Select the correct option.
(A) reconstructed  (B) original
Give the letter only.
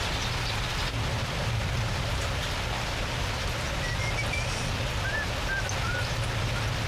B